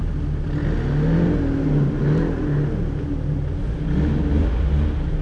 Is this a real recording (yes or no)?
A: yes